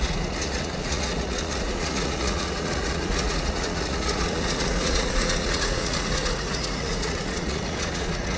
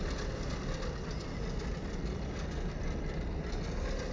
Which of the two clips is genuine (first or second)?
second